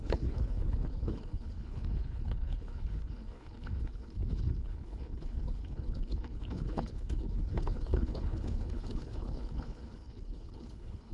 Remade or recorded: remade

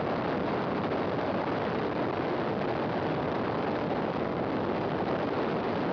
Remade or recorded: recorded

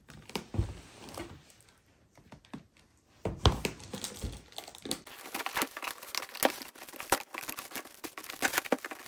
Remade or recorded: recorded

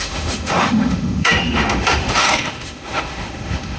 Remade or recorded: remade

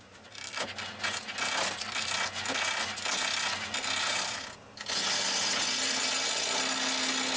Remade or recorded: recorded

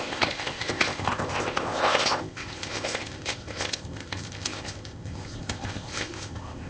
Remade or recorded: remade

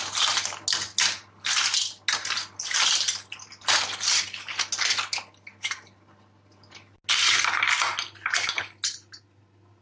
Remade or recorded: recorded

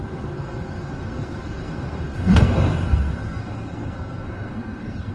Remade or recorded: remade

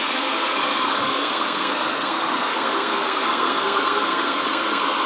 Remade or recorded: remade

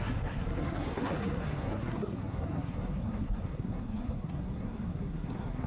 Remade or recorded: remade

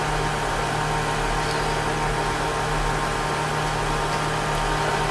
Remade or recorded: recorded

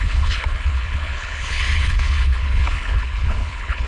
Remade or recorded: remade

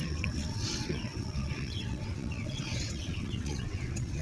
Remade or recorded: remade